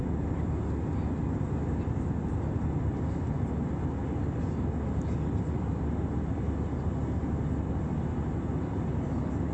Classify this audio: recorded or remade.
recorded